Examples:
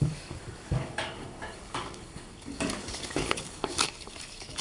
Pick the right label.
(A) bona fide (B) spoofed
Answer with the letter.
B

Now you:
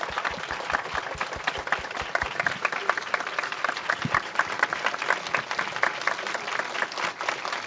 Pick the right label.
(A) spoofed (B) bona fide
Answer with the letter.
B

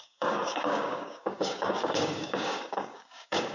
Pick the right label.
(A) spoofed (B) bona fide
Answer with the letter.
A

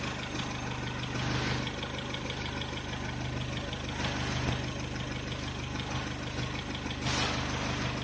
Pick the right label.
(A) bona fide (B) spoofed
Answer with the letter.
A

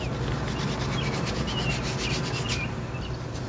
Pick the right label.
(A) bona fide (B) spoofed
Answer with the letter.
A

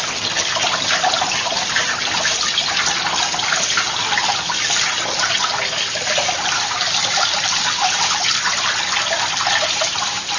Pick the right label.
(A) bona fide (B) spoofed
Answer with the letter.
A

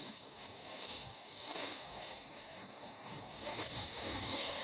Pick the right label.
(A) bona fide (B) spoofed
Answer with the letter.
B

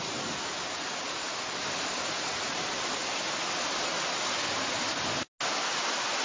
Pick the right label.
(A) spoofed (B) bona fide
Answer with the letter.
B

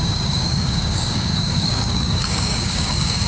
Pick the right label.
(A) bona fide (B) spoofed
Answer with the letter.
B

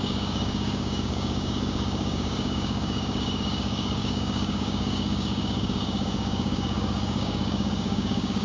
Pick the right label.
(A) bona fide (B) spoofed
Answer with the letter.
B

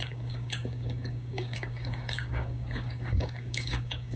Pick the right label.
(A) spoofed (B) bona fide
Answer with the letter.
A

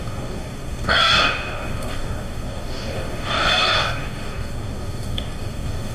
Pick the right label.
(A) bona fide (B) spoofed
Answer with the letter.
B